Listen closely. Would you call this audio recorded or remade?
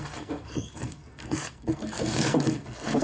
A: remade